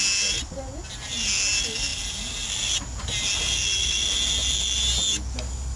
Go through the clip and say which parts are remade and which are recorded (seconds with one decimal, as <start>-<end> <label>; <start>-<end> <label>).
0.0-5.8 recorded